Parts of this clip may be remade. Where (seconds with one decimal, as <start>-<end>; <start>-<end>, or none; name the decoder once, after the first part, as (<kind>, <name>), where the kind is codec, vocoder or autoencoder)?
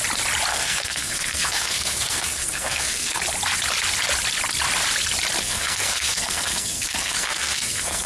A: 0.5-3.2 (codec, SNAC); 5.4-8.1